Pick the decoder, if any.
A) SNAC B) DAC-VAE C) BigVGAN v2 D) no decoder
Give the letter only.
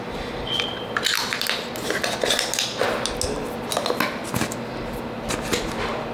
D